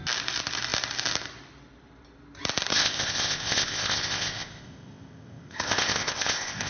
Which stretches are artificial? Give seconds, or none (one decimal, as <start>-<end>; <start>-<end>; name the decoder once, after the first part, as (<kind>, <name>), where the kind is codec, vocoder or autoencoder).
2.7-6.7 (codec, ZipCodec)